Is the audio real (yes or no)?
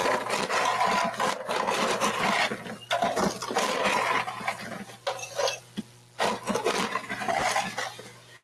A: yes